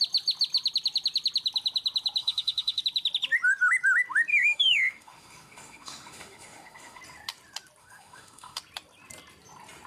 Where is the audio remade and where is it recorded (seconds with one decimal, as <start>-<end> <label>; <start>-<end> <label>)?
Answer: 0.0-2.2 recorded; 2.2-2.8 remade; 2.8-4.3 recorded; 4.3-7.0 remade; 7.0-7.8 recorded; 7.8-8.6 remade; 8.6-9.9 recorded